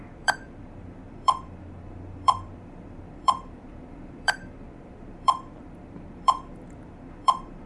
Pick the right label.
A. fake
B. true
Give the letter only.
A